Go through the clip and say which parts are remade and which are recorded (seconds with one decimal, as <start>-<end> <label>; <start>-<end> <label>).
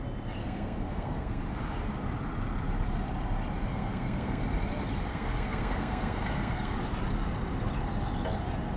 0.0-0.4 recorded; 0.4-1.4 remade; 1.4-3.7 recorded; 3.7-4.4 remade; 4.4-5.1 recorded; 5.1-6.7 remade; 6.7-8.8 recorded